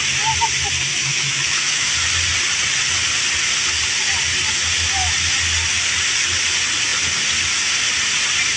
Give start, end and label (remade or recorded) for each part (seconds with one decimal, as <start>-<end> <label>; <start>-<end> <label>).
0.0-0.9 recorded; 0.9-1.9 remade; 1.9-8.6 recorded